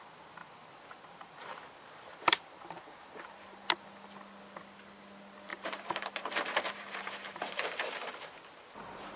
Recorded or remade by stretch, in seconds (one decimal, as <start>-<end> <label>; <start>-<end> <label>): 0.0-0.4 recorded; 0.4-3.7 remade; 3.7-5.5 recorded; 5.5-8.4 remade; 8.4-9.2 recorded